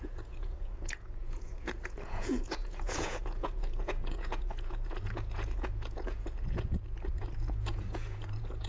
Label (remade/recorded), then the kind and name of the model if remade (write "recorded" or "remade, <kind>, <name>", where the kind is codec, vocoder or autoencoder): remade, vocoder, Vocos